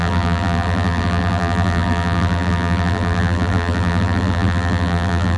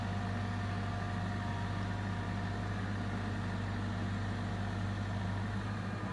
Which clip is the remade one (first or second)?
first